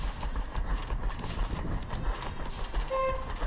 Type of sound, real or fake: real